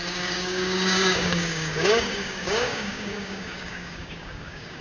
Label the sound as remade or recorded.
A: remade